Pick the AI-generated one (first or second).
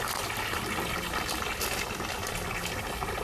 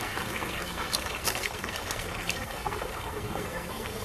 second